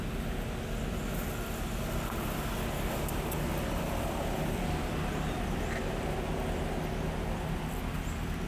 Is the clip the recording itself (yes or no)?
yes